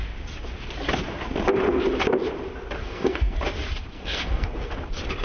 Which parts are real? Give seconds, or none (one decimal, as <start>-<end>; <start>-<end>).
0.0-2.8; 3.4-3.9; 4.7-5.2